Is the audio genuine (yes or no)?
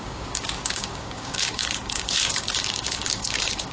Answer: no